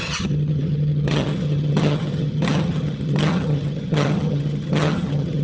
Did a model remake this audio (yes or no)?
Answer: yes